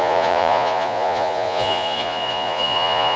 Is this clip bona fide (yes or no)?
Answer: no